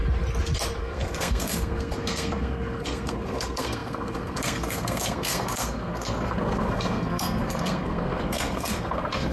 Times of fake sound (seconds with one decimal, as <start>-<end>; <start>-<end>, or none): 0.8-9.3